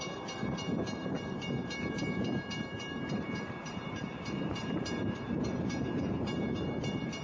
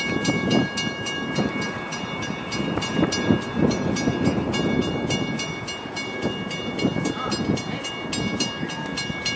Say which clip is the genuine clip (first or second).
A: second